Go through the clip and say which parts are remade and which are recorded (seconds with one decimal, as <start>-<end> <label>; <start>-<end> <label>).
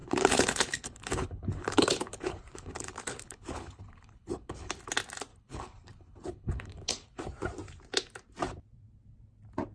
0.0-4.7 remade; 4.7-5.3 recorded; 5.3-7.2 remade; 7.2-9.7 recorded